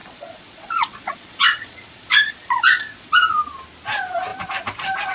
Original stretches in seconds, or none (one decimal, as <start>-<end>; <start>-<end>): 3.1-5.1